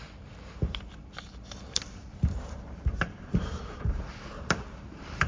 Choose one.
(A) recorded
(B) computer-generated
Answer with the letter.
B